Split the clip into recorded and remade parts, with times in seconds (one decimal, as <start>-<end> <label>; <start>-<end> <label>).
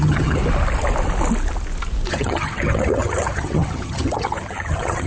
0.0-0.4 remade; 0.4-2.1 recorded; 2.1-5.1 remade